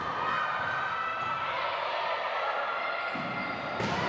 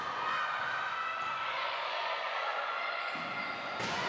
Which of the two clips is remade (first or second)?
second